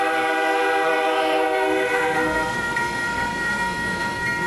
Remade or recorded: remade